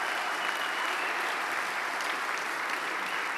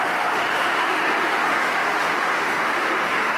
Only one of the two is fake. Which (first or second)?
second